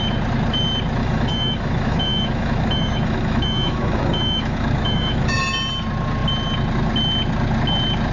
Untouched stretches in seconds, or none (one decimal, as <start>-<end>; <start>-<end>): 0.0-1.0; 5.4-8.1